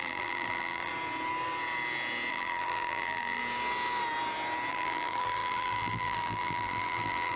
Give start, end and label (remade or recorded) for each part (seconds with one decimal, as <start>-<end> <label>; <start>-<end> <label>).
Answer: 0.0-0.9 remade; 0.9-2.3 recorded; 2.3-3.4 remade; 3.4-4.7 recorded; 4.7-7.4 remade

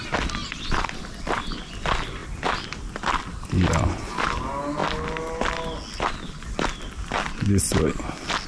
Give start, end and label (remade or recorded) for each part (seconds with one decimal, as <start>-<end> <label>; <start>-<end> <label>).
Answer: 0.0-0.4 recorded; 0.4-1.0 remade; 1.0-8.5 recorded